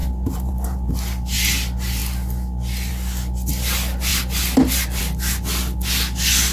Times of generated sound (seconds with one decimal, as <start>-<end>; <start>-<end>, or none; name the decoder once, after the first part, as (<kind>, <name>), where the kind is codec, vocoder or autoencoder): 0.0-0.9 (vocoder, BigVGAN v2)